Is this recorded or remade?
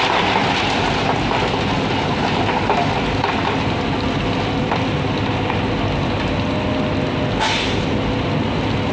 recorded